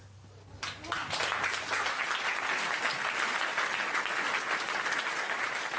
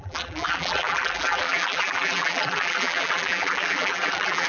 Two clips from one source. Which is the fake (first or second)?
second